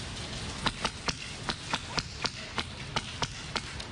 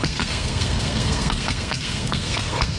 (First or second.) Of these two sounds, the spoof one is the second